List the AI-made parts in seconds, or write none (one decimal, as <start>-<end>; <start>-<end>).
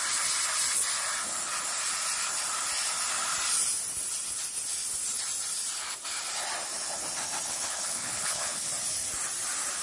7.5-8.7